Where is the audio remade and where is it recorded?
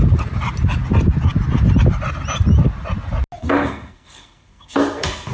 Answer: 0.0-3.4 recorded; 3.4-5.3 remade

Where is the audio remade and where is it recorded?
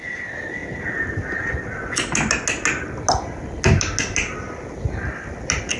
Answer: 0.0-5.8 recorded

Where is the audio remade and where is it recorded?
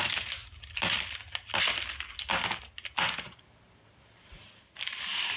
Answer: 0.0-5.4 recorded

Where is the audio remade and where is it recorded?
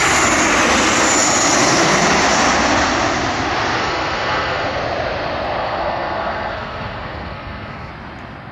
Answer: 0.0-3.8 recorded; 3.8-4.8 remade; 4.8-5.6 recorded; 5.6-7.9 remade; 7.9-8.5 recorded